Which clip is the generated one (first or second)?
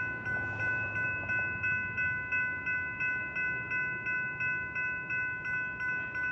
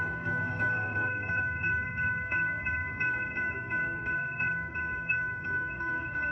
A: second